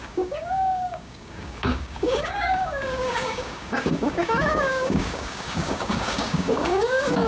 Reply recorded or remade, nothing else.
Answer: remade